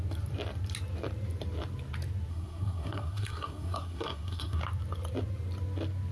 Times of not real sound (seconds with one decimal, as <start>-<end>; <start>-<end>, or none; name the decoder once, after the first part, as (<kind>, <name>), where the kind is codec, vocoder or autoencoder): 2.3-4.6 (codec, SNAC)